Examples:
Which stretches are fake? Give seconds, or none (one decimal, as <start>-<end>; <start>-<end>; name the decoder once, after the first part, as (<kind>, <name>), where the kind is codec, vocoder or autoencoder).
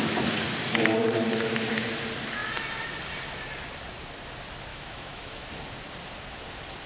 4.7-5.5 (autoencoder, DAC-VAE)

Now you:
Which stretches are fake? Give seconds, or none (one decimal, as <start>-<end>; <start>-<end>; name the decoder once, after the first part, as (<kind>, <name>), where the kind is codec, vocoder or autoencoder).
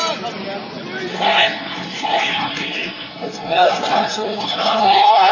1.1-5.3 (codec, SNAC)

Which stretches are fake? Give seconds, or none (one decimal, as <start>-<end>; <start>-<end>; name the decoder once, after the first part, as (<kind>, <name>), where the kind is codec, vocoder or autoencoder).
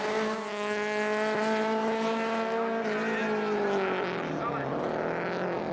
none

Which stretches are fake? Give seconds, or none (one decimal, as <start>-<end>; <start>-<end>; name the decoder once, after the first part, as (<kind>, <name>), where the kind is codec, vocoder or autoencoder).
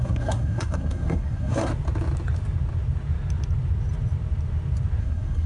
0.0-1.7 (codec, SNAC); 5.0-5.5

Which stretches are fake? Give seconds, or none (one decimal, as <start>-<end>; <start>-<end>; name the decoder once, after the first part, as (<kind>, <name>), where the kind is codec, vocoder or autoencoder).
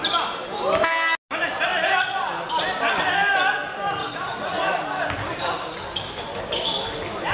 4.0-4.6 (vocoder, Vocos)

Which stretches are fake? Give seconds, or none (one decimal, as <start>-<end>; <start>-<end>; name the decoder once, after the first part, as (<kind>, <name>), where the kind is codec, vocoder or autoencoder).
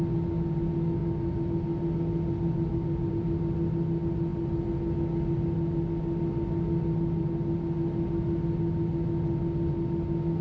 none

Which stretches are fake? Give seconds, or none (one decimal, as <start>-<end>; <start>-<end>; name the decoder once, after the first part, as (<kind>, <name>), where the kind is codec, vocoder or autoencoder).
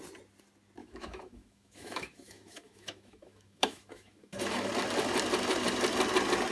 0.8-4.7 (autoencoder, DAC-VAE)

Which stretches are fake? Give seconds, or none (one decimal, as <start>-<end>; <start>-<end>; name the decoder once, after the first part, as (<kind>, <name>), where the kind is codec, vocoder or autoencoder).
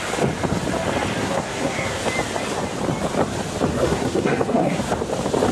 1.2-2.0 (codec, SNAC); 3.7-4.8